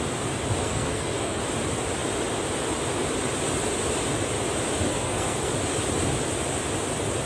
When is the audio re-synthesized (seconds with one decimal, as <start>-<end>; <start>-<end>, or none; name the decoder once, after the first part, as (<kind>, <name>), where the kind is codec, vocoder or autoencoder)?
0.6-1.4 (codec, SNAC); 4.9-5.5